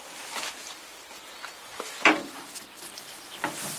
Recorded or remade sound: recorded